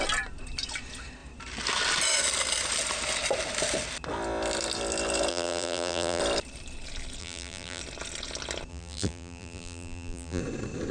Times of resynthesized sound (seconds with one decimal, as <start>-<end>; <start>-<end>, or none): 5.3-6.2; 7.2-7.8; 8.7-10.4